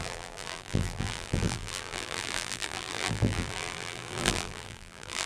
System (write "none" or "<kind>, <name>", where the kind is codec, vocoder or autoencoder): vocoder, BigVGAN v2